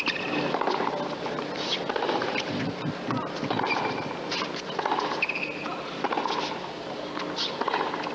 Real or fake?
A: real